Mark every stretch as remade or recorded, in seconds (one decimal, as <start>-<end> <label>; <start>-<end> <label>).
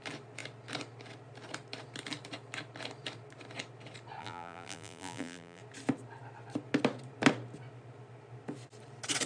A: 0.0-4.2 recorded; 4.2-5.6 remade; 5.6-9.3 recorded